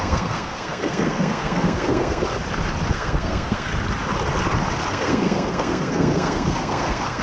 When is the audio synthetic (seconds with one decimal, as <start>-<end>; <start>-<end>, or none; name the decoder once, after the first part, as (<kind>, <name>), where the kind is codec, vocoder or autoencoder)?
0.0-2.2 (codec, SNAC); 2.9-3.7; 4.9-7.2